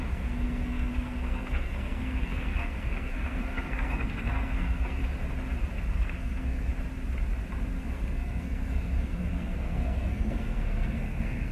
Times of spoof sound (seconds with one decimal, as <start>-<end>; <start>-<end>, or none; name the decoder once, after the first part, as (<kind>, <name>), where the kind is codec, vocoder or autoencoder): 0.0-5.0 (codec, SNAC); 5.9-6.7; 7.8-11.5